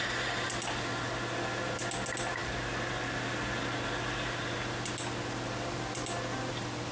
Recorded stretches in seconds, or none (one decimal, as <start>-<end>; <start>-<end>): 0.0-6.9